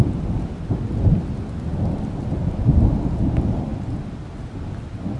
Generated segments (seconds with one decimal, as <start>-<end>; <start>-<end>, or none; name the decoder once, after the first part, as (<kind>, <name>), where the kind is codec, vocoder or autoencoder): 1.7-2.8 (vocoder, BigVGAN v2)

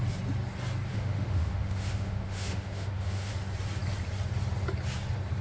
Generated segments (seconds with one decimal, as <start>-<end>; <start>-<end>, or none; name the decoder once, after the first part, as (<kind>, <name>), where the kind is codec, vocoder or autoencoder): 0.9-3.3 (autoencoder, DAC-VAE)

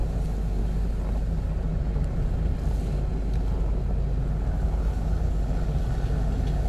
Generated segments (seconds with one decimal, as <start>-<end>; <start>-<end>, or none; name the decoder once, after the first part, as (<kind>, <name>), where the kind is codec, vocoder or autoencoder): none

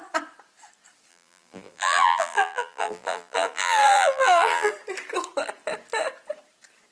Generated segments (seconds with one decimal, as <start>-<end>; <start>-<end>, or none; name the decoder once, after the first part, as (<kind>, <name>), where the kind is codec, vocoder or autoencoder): 1.1-4.7 (vocoder, BigVGAN v2)

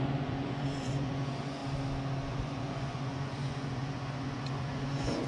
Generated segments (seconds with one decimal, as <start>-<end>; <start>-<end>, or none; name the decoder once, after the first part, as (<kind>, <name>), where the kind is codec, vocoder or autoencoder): 0.0-1.6 (vocoder, Vocos); 2.3-5.3